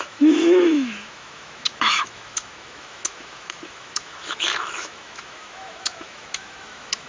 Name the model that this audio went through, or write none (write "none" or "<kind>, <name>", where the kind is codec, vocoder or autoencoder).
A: autoencoder, DAC-VAE